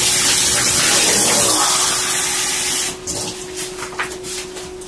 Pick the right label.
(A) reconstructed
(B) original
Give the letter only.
B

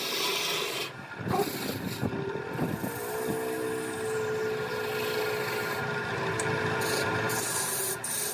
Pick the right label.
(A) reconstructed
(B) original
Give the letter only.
B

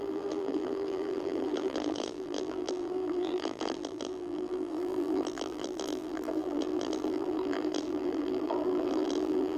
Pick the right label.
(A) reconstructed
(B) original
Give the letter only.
A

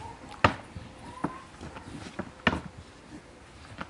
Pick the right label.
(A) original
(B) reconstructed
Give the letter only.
A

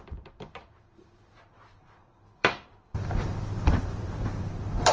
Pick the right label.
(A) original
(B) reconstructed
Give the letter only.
B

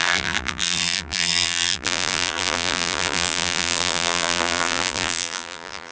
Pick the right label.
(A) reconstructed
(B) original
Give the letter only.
A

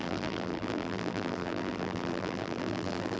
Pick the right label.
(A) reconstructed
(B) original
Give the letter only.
A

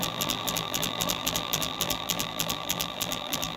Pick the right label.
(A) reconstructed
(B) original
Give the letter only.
A